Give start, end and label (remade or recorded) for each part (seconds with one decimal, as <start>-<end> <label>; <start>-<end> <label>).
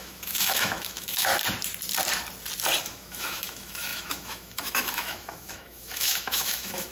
0.0-1.3 remade; 1.3-2.8 recorded; 2.8-6.9 remade